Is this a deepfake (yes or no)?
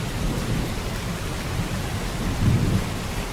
no